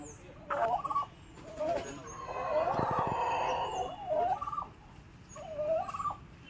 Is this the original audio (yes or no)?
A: yes